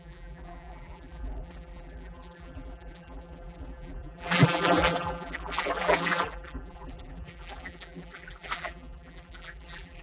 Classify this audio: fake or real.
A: fake